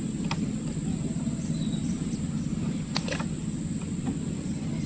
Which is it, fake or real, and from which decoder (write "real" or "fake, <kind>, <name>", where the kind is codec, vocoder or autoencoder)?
real